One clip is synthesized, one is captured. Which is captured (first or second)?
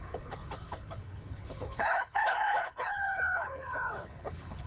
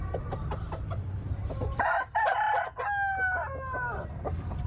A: second